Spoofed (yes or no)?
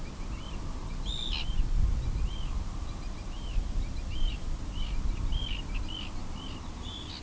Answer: no